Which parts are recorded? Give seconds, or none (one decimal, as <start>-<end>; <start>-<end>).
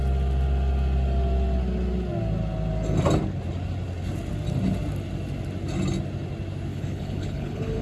0.0-6.7